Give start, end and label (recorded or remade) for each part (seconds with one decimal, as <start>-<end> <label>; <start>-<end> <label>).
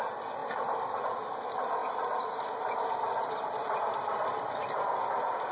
0.0-5.5 recorded